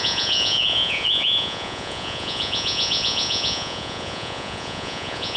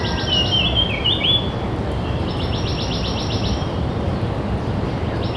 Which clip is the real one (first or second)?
second